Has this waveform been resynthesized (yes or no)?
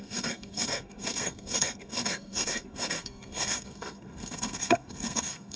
yes